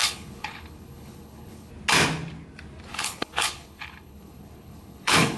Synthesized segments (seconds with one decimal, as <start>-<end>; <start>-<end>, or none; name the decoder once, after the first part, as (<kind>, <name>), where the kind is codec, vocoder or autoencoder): 0.0-1.7 (codec, HILCodec); 2.9-5.4